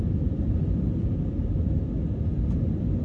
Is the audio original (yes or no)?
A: yes